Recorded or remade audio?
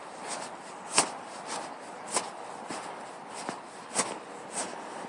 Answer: recorded